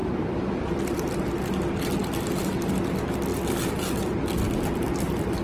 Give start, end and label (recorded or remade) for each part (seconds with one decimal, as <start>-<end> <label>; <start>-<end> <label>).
0.0-0.6 remade; 0.6-3.3 recorded; 3.3-4.0 remade; 4.0-5.4 recorded